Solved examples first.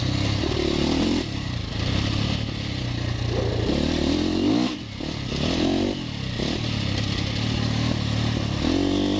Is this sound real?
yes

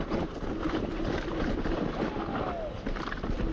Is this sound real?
yes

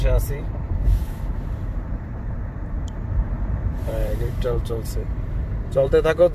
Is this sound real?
no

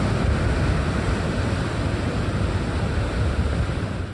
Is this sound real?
yes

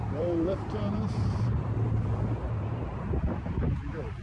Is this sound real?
no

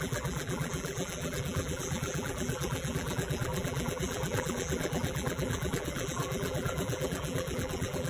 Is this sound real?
no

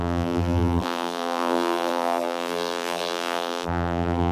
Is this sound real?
no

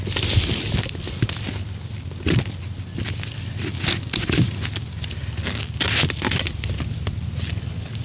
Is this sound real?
yes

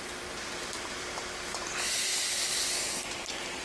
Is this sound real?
no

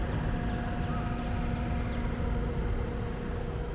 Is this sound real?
yes